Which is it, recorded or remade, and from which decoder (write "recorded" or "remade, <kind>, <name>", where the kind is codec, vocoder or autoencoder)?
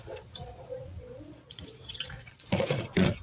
remade, vocoder, Vocos